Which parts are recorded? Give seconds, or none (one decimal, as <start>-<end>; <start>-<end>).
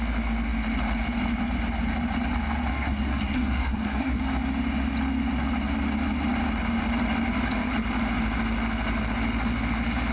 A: 0.0-2.7; 4.2-10.1